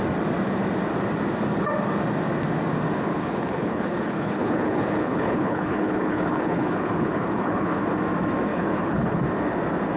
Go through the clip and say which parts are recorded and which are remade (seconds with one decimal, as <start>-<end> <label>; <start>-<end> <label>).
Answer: 0.0-3.2 recorded; 3.2-7.8 remade; 7.8-8.5 recorded; 8.5-9.2 remade; 9.2-10.0 recorded